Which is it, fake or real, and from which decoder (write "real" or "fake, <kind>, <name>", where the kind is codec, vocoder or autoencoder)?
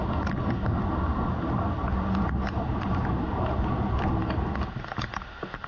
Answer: real